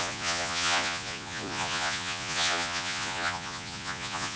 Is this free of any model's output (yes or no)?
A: no